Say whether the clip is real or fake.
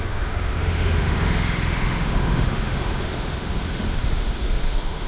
fake